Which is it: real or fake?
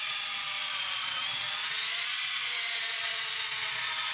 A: fake